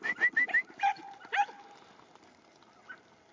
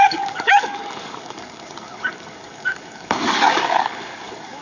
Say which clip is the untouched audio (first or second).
first